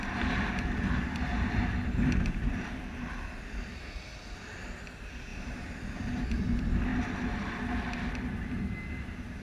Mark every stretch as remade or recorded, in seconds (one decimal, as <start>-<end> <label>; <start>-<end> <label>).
0.0-9.4 recorded